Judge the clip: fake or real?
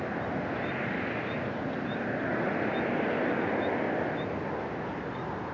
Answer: real